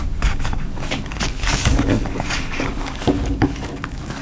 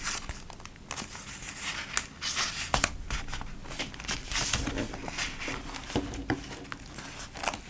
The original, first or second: second